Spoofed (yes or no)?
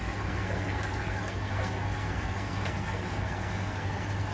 yes